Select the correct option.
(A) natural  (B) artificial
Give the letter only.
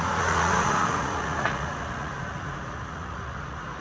B